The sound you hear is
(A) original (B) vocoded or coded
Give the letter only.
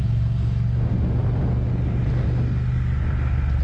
A